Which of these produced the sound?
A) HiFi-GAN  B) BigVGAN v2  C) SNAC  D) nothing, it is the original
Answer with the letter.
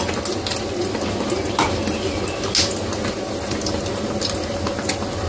D